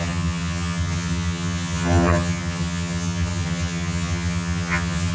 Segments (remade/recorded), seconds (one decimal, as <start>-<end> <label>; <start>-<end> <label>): 0.0-5.1 remade